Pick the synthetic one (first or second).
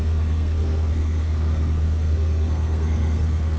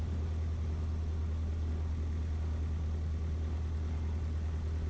first